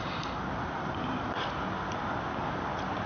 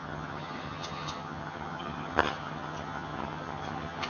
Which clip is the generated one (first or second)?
second